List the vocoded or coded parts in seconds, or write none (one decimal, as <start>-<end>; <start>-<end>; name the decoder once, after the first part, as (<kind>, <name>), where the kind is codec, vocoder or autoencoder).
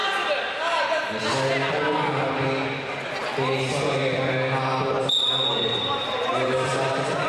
none